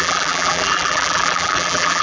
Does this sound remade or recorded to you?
remade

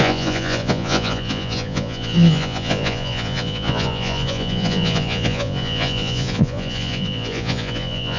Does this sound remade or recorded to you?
remade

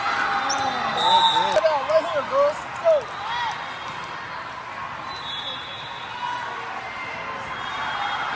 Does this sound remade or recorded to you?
recorded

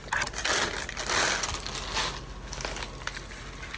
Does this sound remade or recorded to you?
recorded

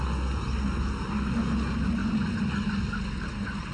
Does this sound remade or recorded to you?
recorded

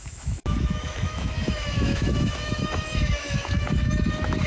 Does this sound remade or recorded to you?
remade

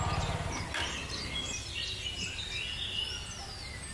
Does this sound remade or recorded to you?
recorded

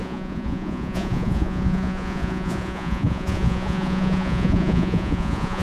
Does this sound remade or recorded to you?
remade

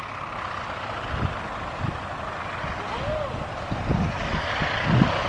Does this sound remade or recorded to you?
recorded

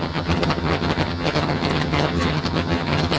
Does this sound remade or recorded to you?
remade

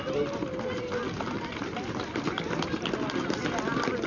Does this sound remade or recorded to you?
recorded